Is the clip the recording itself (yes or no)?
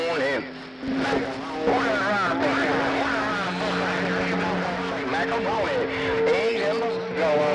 yes